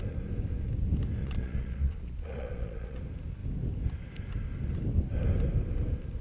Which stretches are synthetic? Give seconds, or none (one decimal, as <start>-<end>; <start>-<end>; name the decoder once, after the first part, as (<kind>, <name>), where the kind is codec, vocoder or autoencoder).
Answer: 1.2-3.0 (vocoder, Vocos)